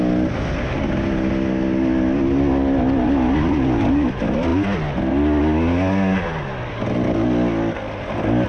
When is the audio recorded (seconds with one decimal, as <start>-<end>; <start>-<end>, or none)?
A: 0.0-8.5